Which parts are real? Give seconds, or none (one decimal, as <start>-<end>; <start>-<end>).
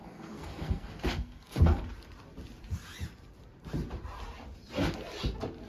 1.8-5.7